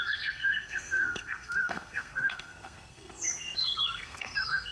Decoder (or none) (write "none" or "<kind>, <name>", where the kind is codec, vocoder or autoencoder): codec, SNAC